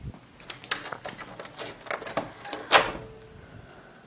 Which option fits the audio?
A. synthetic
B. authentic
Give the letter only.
B